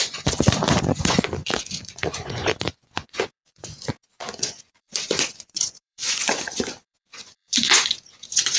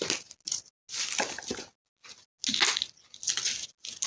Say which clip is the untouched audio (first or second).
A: second